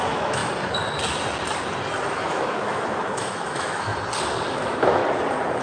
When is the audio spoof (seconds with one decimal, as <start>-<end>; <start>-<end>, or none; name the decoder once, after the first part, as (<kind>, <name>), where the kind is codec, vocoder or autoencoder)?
0.0-0.4 (autoencoder, DAC-VAE); 2.1-3.9; 4.5-5.0